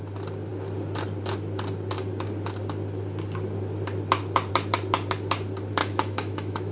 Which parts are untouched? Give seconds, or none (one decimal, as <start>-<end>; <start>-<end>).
0.0-5.8